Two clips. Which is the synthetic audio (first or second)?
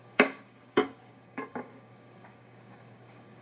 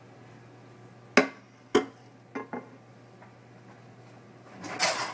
first